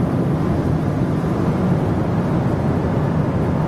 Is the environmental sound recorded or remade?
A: recorded